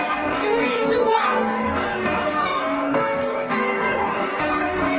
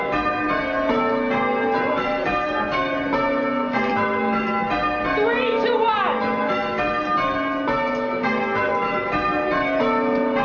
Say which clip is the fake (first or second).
first